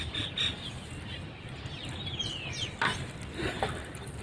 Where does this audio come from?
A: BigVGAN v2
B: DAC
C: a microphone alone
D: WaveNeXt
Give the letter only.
C